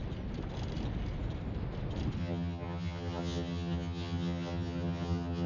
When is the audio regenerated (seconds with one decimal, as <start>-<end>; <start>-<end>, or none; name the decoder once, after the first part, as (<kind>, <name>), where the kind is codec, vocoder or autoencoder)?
2.2-5.5 (vocoder, HiFi-GAN)